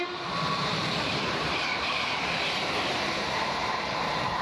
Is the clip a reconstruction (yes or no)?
yes